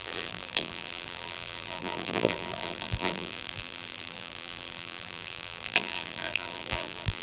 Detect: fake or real fake